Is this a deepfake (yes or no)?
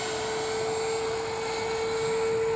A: no